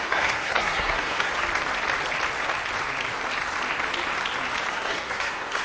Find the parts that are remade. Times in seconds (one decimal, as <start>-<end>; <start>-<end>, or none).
0.0-1.3; 4.7-5.6